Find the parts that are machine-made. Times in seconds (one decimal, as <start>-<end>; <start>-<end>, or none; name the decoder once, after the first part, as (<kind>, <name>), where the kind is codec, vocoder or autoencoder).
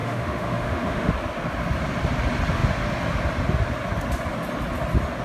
0.0-1.1 (autoencoder, DAC-VAE)